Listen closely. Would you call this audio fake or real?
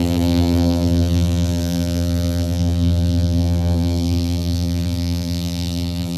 fake